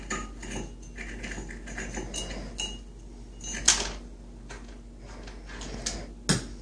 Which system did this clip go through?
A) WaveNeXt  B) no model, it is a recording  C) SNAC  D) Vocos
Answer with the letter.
B